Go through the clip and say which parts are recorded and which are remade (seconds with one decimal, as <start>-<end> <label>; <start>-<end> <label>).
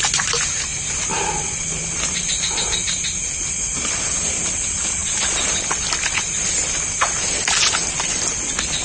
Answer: 0.0-8.8 recorded